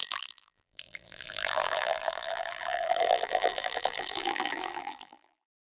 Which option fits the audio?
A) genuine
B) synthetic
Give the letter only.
B